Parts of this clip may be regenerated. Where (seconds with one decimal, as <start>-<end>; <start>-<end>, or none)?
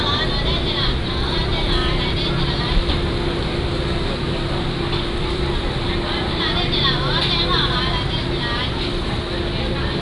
none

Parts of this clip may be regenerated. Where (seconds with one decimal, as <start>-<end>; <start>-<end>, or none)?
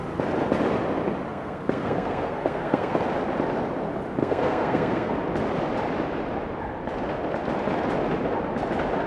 1.3-3.0; 4.2-5.1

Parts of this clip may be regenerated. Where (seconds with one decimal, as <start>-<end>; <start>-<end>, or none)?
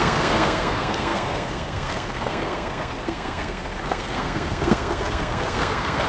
0.0-6.1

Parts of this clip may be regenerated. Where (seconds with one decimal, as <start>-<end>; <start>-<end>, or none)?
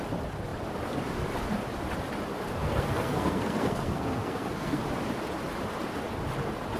2.6-4.8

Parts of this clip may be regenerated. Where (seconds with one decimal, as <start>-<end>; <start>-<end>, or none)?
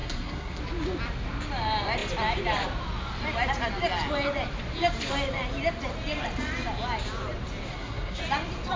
0.0-0.6; 7.7-8.2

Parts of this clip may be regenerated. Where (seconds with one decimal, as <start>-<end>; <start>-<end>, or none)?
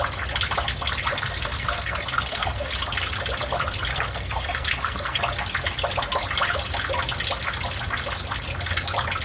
1.1-2.7; 3.9-5.2